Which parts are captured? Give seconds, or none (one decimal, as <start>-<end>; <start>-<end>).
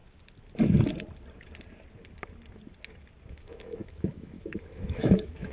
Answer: 0.0-3.3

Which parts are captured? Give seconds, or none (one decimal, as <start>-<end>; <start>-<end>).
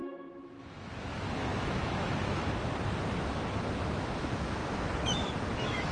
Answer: none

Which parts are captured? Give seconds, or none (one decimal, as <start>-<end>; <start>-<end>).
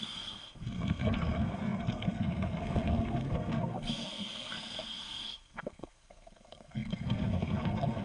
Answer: none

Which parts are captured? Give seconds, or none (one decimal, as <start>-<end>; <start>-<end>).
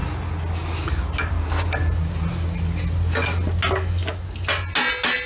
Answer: 0.0-5.3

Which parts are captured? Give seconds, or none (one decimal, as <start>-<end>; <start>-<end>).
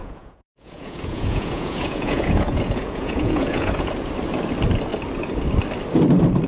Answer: 3.9-6.5